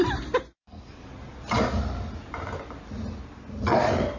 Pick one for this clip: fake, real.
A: real